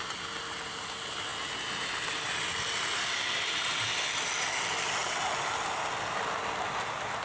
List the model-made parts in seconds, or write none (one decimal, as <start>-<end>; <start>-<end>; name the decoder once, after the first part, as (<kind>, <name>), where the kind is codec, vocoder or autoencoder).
none